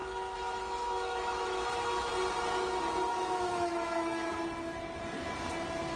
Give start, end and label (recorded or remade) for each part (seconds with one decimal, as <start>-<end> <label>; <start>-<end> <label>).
0.0-2.1 remade; 2.1-3.1 recorded; 3.1-4.3 remade; 4.3-6.0 recorded